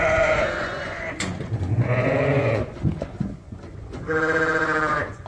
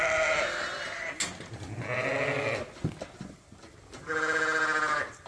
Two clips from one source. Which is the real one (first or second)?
second